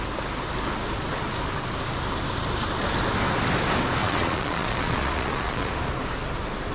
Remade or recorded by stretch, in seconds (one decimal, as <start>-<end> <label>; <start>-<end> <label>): 0.0-4.0 recorded; 4.0-5.7 remade; 5.7-6.7 recorded